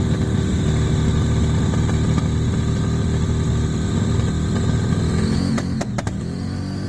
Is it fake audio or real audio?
real